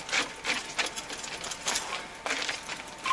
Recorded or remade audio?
recorded